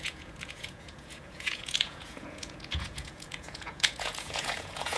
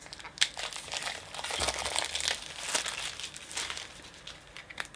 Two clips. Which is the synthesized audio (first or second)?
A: first